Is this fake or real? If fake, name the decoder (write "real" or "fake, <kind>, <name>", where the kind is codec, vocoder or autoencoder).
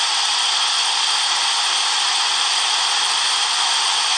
real